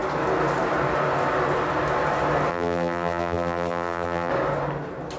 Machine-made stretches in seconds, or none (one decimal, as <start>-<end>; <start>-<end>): 2.5-4.3